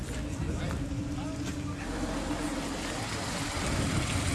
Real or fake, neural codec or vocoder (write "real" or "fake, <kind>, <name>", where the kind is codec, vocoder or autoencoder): real